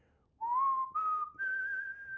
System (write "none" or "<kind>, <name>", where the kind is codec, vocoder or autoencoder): none